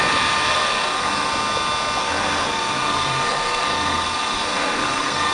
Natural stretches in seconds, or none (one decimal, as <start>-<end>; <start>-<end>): 0.0-0.5; 1.3-2.0